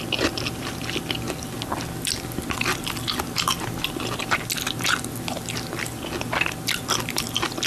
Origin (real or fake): real